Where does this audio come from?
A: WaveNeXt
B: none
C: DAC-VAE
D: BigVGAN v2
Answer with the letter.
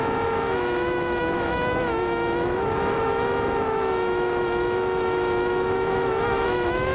C